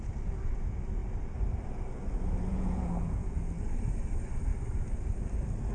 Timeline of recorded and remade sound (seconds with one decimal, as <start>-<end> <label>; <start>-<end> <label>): 0.0-2.5 recorded; 2.5-3.4 remade; 3.4-5.7 recorded